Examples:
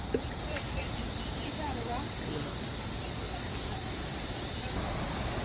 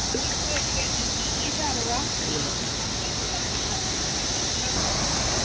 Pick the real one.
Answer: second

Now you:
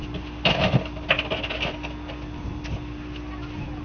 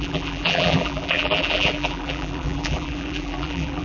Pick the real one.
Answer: first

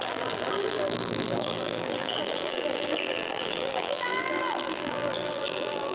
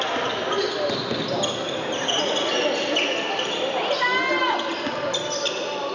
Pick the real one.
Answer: second